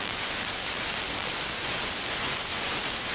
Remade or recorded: remade